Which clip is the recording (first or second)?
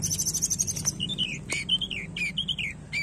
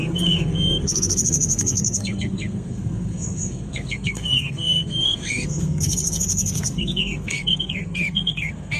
first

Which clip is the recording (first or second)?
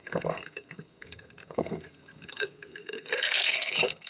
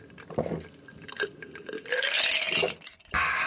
second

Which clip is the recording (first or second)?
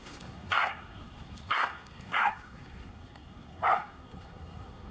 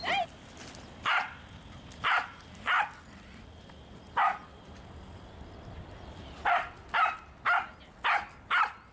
second